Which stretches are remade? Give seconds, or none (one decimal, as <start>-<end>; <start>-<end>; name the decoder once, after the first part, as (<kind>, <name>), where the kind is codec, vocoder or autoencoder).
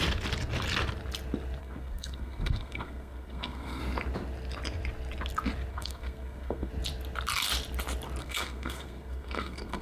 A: 1.6-3.8 (codec, SNAC); 5.7-6.7; 8.2-9.8